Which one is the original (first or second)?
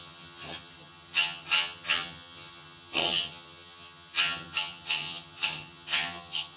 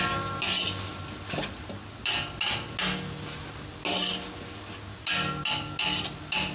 second